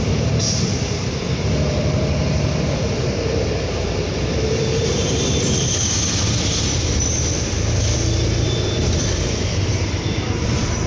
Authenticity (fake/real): fake